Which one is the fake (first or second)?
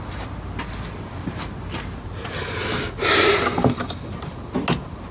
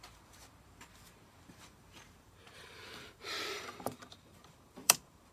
second